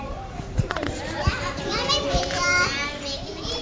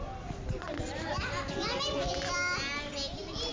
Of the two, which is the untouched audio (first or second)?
second